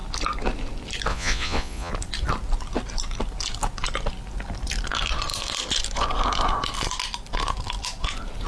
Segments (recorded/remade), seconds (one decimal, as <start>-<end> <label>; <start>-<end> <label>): 0.0-1.1 recorded; 1.1-1.9 remade; 1.9-8.5 recorded